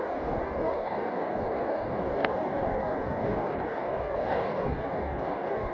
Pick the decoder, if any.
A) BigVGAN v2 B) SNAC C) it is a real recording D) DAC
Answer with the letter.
D